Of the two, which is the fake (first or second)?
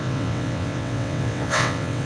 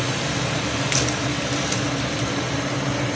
first